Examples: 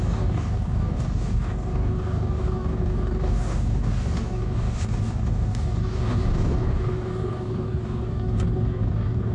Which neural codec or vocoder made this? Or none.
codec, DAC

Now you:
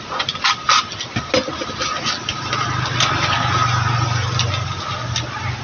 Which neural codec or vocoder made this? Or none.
none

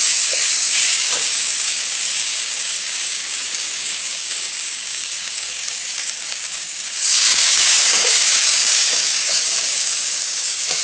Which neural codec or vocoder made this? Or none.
codec, DAC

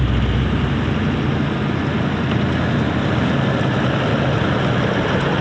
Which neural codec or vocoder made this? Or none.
none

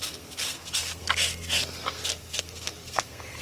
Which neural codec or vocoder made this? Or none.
codec, SNAC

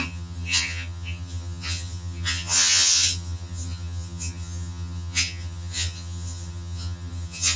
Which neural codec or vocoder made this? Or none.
vocoder, HiFi-GAN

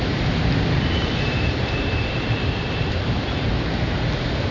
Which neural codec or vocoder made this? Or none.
vocoder, BigVGAN v2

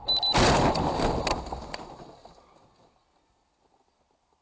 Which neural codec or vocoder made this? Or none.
none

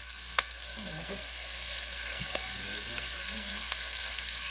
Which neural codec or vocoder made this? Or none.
codec, SNAC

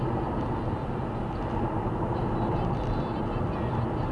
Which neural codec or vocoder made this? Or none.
none